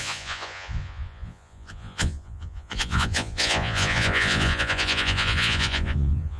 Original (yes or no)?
no